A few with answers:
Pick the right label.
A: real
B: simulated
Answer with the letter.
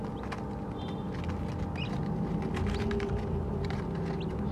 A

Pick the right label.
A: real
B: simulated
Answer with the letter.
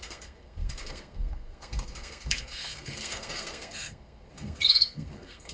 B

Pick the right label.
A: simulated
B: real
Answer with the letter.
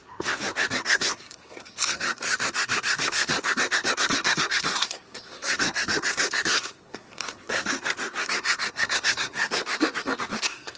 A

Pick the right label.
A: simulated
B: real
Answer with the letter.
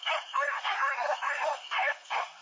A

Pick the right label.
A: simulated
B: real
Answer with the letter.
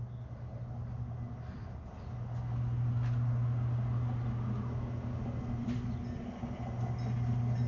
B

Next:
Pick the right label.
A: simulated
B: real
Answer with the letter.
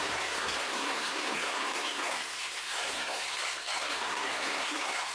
A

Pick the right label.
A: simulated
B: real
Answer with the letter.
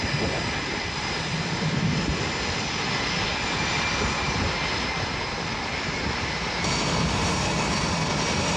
B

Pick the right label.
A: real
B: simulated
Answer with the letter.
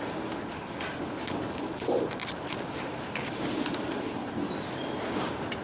A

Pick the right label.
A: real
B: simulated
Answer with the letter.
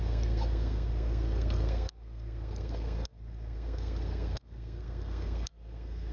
B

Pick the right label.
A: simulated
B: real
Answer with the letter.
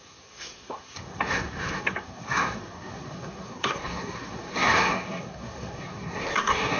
A